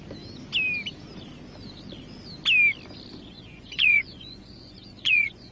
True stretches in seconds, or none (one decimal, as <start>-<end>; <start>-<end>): 0.0-3.1